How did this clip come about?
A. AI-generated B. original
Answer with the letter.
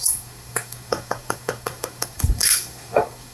A